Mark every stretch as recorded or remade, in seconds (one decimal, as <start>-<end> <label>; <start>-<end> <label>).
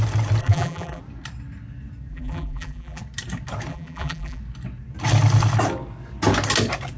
0.0-0.4 recorded; 0.4-1.0 remade; 1.0-2.1 recorded; 2.1-3.0 remade; 3.0-3.7 recorded; 3.7-4.4 remade; 4.4-7.0 recorded